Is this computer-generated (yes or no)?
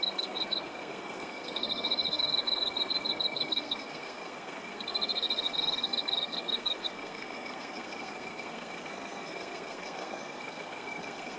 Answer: yes